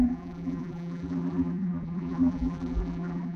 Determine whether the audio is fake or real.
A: fake